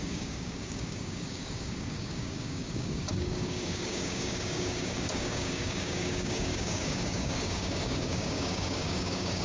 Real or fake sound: fake